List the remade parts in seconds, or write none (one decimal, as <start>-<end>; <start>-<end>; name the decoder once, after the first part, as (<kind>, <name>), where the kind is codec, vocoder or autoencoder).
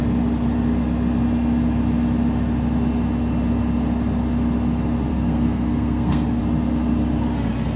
5.1-6.4 (codec, SNAC)